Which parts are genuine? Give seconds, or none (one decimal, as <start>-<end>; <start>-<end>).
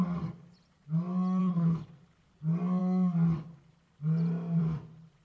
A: 0.0-1.4; 1.9-5.2